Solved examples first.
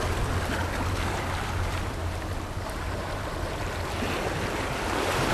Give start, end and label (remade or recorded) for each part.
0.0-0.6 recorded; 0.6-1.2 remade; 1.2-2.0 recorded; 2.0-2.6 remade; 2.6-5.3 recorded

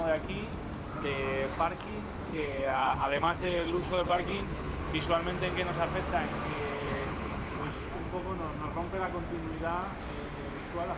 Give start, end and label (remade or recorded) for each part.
0.0-2.3 recorded; 2.3-4.8 remade; 4.8-6.7 recorded; 6.7-7.9 remade; 7.9-11.0 recorded

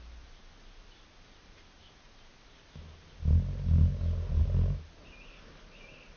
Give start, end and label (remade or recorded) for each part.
0.0-6.2 recorded

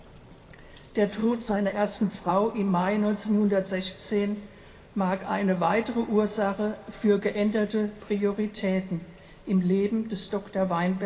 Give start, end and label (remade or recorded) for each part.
0.0-1.2 recorded; 1.2-2.3 remade; 2.3-11.1 recorded

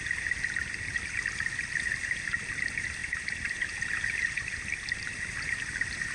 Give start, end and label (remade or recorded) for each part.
0.0-6.1 recorded

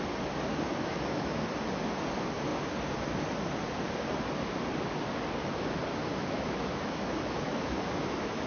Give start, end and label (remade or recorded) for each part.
0.0-0.5 recorded; 0.5-1.4 remade; 1.4-6.1 recorded; 6.1-8.5 remade

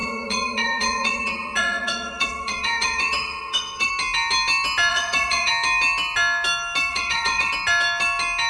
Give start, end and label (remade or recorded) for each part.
0.0-3.9 remade; 3.9-4.9 recorded; 4.9-5.5 remade; 5.5-6.9 recorded; 6.9-7.5 remade; 7.5-8.5 recorded